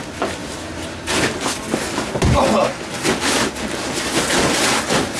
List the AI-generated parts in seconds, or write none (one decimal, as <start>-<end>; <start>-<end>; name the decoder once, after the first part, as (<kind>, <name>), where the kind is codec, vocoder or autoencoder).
none